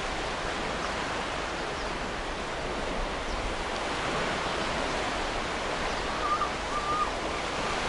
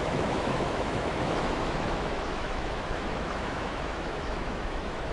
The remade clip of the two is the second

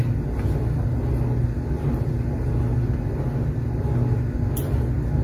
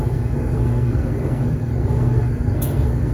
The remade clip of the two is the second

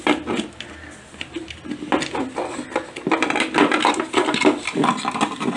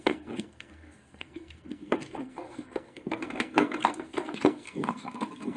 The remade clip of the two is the second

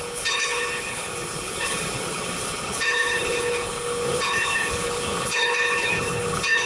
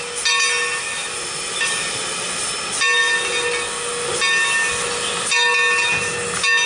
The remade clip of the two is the first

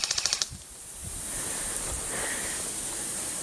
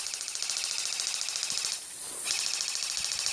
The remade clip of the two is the first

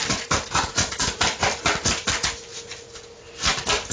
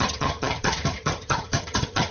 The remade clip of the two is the second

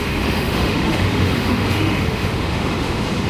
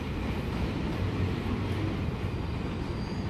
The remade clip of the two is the first